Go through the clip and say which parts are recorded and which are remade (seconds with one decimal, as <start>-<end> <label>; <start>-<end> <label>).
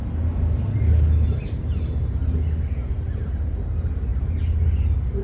0.0-5.2 recorded